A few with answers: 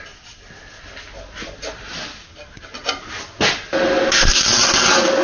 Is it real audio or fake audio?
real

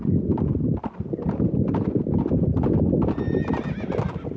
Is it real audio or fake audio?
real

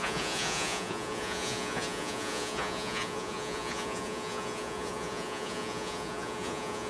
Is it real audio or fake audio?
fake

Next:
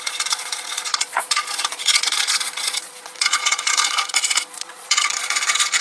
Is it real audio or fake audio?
fake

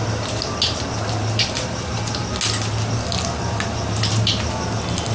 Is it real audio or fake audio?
real